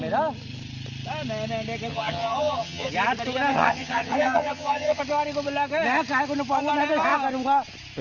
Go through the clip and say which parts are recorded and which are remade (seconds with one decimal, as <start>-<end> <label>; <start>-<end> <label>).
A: 0.0-1.9 recorded; 1.9-2.9 remade; 2.9-3.5 recorded; 3.5-5.0 remade; 5.0-8.0 recorded